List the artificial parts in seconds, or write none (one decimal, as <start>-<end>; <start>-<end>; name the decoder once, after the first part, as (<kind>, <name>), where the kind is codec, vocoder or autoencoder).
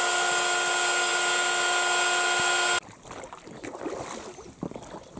none